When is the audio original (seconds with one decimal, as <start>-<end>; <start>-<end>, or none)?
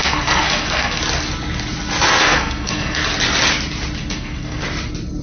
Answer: 1.0-2.2; 3.0-4.1; 4.6-5.2